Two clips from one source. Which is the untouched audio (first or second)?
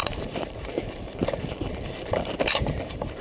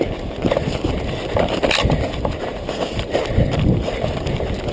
second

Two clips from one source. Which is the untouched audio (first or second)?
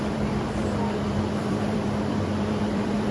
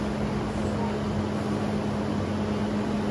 second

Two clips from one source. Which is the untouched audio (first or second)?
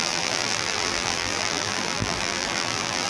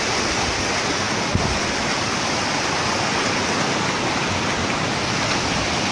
second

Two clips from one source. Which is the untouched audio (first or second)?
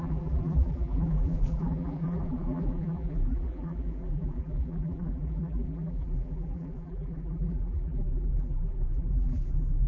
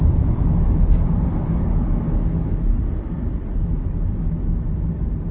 second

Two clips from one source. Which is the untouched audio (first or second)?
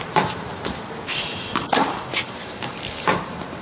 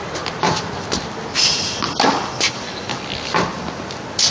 second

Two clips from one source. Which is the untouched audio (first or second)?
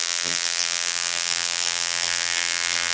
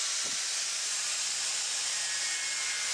second